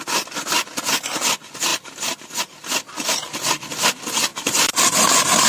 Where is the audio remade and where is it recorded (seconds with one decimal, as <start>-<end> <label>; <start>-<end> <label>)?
0.0-1.7 recorded; 1.7-2.4 remade; 2.4-4.3 recorded; 4.3-4.8 remade; 4.8-5.5 recorded